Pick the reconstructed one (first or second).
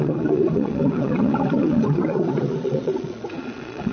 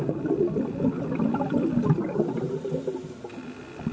first